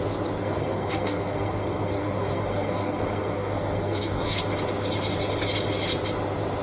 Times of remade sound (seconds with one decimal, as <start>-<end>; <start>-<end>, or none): 0.4-4.4